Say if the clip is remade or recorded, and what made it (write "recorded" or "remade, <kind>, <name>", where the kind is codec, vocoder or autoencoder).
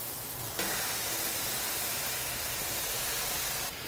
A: recorded